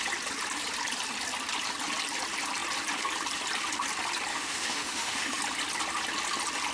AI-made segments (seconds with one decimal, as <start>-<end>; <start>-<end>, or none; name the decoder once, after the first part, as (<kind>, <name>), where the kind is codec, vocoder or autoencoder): 4.3-5.4 (autoencoder, DAC-VAE)